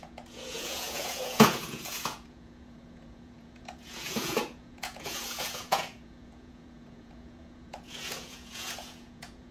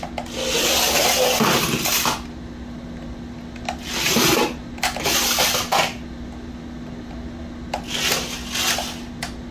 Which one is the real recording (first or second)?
second